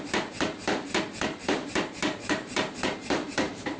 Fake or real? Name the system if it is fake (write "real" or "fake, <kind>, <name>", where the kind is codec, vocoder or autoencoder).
fake, vocoder, BigVGAN v2